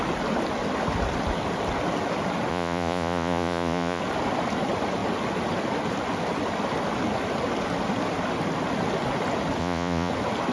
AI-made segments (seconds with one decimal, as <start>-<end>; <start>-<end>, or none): 2.5-4.0; 9.6-10.1